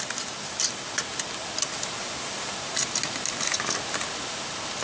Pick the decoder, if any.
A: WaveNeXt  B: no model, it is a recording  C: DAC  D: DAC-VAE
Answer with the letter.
B